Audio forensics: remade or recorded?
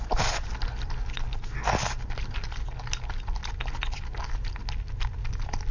recorded